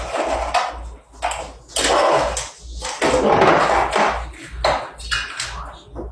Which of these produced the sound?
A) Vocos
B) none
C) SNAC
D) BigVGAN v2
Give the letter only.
B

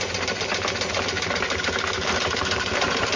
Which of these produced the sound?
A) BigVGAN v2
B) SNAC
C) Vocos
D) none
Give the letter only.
D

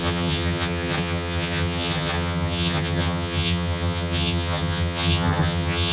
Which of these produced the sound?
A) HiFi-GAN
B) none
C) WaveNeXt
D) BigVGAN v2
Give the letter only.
A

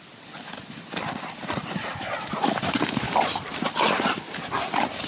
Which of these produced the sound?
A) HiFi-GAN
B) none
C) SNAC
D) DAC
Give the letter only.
B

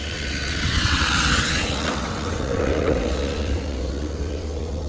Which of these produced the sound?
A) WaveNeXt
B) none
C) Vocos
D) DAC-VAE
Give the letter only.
A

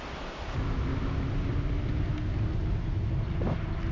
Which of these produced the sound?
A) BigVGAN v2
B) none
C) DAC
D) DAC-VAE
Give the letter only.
B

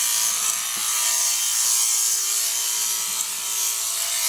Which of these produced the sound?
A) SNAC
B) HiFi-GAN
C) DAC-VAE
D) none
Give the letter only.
D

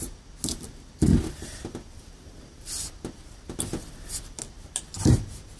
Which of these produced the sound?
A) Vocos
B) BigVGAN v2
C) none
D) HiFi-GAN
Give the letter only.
C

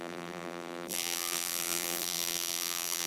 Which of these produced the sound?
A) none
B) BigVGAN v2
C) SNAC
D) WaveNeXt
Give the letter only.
B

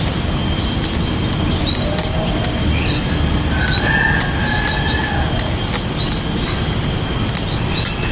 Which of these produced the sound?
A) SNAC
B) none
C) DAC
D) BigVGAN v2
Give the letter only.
B